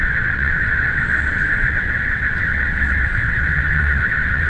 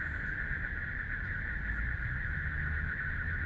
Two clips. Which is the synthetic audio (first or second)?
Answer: first